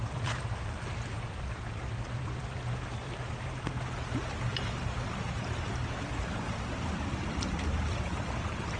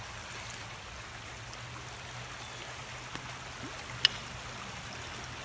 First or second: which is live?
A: second